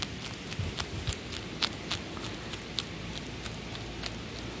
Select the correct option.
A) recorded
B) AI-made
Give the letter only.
A